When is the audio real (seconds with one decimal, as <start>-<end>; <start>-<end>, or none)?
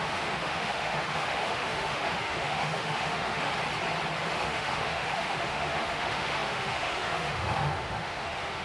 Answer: 3.5-4.2